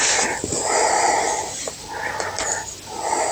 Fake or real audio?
real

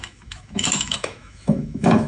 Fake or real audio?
fake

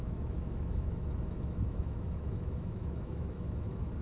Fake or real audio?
fake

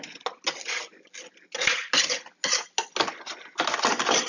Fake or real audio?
real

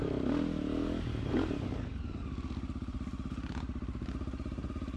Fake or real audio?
real